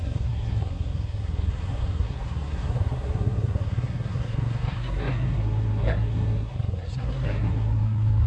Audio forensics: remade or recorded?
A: remade